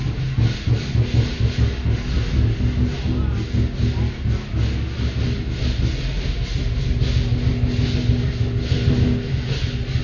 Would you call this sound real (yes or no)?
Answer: yes